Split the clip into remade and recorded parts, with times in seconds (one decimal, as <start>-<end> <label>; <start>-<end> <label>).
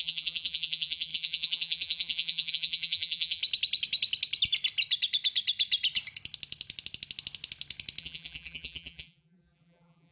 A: 0.0-3.4 remade; 3.4-8.0 recorded; 8.0-10.1 remade